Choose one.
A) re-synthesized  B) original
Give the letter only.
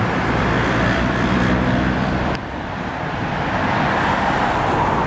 A